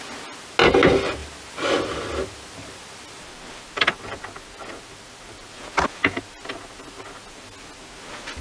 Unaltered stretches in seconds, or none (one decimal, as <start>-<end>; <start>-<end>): 0.0-8.4